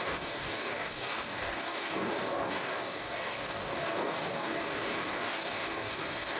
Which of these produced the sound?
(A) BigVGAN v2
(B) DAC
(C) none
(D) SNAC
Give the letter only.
B